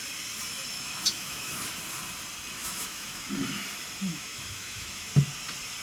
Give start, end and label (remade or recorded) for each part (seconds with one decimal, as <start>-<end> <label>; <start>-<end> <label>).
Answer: 0.0-0.7 recorded; 0.7-1.6 remade; 1.6-2.6 recorded; 2.6-3.3 remade; 3.3-4.1 recorded; 4.1-5.1 remade; 5.1-5.8 recorded

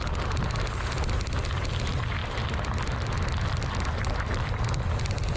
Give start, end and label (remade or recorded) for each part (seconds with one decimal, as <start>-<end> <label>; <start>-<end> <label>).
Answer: 0.0-5.4 recorded

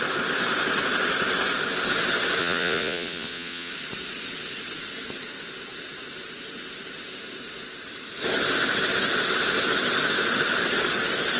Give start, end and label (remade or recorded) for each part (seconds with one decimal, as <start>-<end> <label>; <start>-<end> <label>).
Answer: 0.0-2.4 recorded; 2.4-3.7 remade; 3.7-11.4 recorded

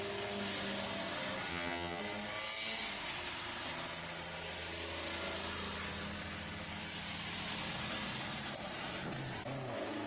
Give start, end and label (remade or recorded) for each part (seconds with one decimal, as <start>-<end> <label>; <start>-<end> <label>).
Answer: 0.0-1.5 recorded; 1.5-2.0 remade; 2.0-10.1 recorded

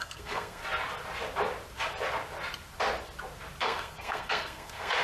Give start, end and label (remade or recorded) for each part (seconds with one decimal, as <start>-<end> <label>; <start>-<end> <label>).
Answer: 0.0-0.6 remade; 0.6-3.6 recorded; 3.6-5.0 remade

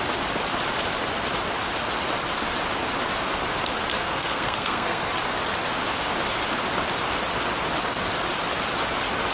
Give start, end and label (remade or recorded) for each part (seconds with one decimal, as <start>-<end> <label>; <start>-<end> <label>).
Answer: 0.0-3.9 recorded; 3.9-5.1 remade; 5.1-9.3 recorded

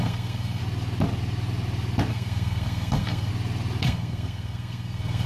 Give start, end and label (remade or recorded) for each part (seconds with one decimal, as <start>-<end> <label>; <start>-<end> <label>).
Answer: 0.0-0.6 remade; 0.6-2.1 recorded; 2.1-3.3 remade; 3.3-3.8 recorded; 3.8-5.3 remade

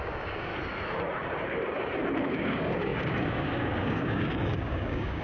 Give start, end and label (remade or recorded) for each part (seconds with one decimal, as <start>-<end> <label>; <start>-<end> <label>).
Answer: 0.0-0.5 remade; 0.5-2.2 recorded; 2.2-5.2 remade